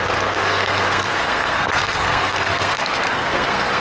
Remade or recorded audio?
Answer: remade